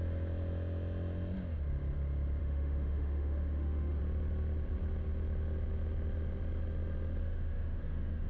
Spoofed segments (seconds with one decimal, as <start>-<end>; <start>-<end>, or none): 2.4-4.0; 7.2-8.3